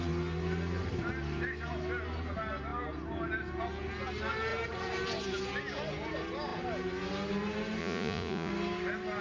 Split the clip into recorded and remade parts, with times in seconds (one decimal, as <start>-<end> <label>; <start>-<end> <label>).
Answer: 0.0-7.8 recorded; 7.8-8.5 remade; 8.5-9.2 recorded